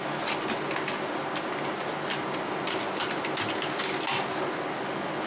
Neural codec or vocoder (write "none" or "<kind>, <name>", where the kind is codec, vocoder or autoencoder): none